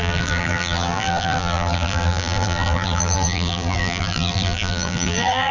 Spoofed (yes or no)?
yes